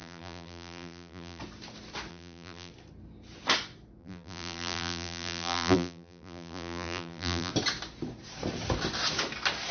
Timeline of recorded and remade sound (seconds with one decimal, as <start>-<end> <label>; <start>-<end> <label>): 0.0-1.4 remade; 1.4-2.1 recorded; 2.1-2.7 remade; 2.7-4.0 recorded; 4.0-7.5 remade; 7.5-9.7 recorded